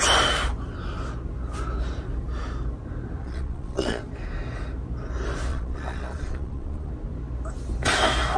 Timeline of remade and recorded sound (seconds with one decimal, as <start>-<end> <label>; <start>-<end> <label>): 0.0-3.2 recorded; 3.2-4.0 remade; 4.0-5.5 recorded; 5.5-6.9 remade; 6.9-8.4 recorded